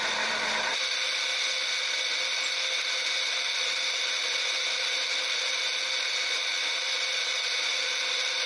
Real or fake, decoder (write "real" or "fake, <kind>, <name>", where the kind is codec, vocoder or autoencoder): real